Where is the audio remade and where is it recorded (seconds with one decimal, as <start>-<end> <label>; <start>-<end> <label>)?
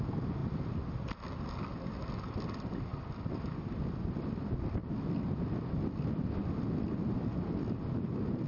0.0-8.5 recorded